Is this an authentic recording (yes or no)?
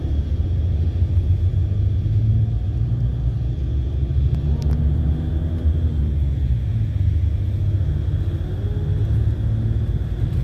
yes